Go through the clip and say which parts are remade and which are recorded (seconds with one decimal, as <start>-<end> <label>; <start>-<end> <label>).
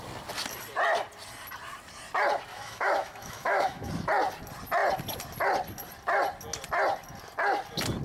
0.0-2.5 recorded; 2.5-3.9 remade; 3.9-8.0 recorded